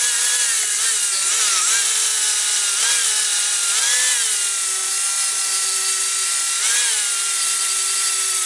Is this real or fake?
real